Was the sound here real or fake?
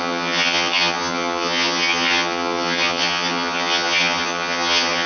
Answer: fake